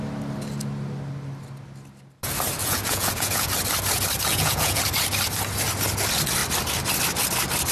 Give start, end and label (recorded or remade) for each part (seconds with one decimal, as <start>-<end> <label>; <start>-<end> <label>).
0.0-2.6 recorded; 2.6-3.5 remade; 3.5-4.3 recorded; 4.3-4.8 remade; 4.8-7.7 recorded